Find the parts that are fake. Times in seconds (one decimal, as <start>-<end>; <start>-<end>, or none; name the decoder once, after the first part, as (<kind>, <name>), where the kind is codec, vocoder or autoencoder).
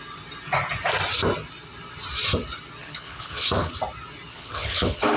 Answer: 2.8-3.7 (codec, HILCodec); 4.3-5.2